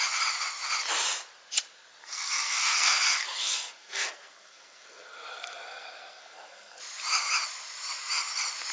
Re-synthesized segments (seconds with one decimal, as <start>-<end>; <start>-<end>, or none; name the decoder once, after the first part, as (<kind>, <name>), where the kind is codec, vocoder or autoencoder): 2.0-6.8 (codec, SNAC)